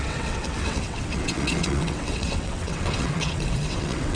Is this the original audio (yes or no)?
no